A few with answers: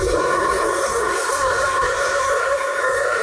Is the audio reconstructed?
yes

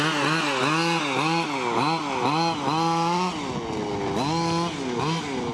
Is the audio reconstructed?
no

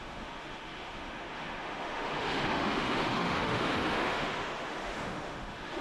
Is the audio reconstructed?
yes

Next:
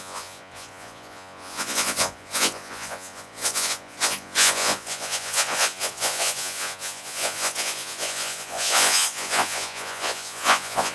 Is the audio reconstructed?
yes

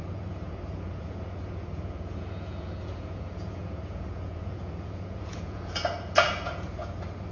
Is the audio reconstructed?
yes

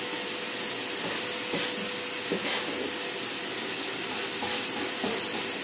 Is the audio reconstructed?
no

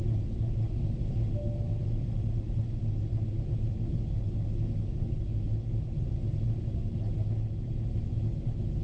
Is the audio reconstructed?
no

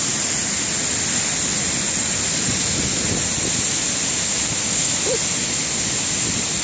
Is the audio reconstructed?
no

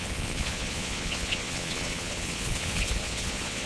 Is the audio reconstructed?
yes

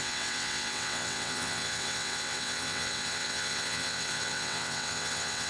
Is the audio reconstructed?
yes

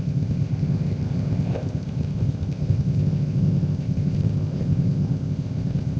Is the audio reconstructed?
yes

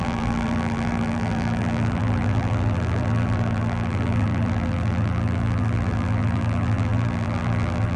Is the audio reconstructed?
yes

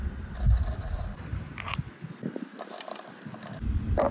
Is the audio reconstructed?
no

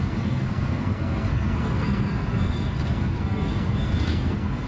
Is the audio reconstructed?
yes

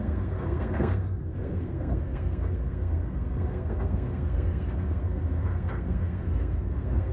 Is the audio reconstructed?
yes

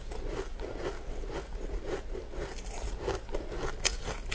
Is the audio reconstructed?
no